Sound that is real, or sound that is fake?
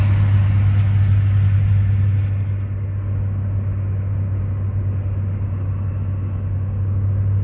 real